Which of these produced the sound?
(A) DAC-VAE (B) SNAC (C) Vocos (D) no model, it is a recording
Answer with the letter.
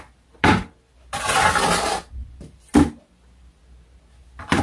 D